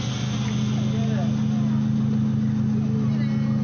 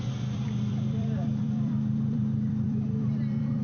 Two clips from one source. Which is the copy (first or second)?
second